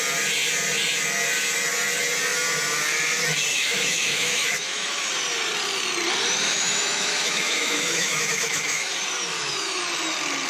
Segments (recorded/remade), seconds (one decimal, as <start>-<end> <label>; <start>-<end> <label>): 0.0-3.5 recorded; 3.5-5.1 remade; 5.1-6.5 recorded; 6.5-8.9 remade; 8.9-9.3 recorded; 9.3-9.8 remade; 9.8-10.5 recorded